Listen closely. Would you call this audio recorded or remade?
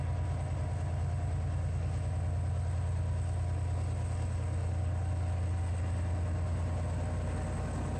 recorded